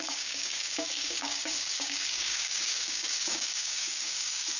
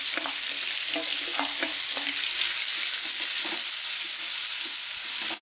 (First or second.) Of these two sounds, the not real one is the first